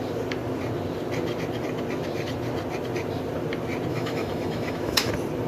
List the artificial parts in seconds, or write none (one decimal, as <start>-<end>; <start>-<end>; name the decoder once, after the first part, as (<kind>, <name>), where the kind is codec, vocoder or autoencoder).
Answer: 3.9-5.1 (autoencoder, DAC-VAE)